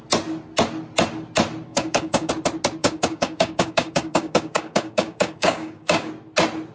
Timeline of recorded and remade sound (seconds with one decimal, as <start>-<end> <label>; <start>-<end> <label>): 0.0-1.7 recorded; 1.7-2.3 remade; 2.3-2.8 recorded; 2.8-6.1 remade; 6.1-6.7 recorded